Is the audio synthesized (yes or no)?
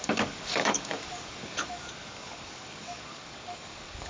yes